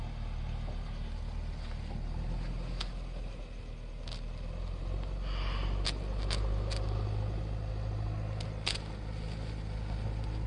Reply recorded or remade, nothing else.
recorded